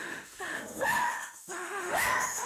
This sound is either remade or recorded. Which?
remade